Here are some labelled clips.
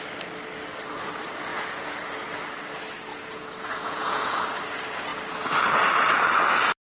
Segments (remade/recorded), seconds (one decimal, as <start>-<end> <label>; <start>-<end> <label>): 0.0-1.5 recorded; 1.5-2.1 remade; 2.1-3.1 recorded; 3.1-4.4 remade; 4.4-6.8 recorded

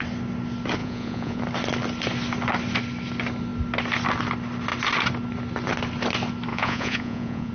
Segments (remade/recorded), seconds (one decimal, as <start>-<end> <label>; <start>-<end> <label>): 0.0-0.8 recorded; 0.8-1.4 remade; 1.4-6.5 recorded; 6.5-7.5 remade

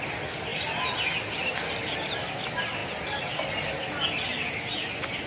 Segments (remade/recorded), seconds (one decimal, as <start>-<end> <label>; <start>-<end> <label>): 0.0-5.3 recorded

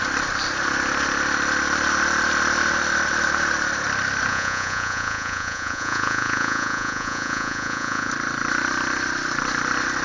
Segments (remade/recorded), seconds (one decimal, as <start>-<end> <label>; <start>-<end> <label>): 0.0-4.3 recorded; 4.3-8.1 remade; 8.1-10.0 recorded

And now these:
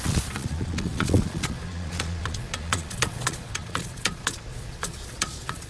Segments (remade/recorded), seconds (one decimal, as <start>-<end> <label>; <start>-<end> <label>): 0.0-5.7 remade